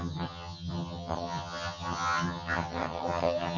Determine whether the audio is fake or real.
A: fake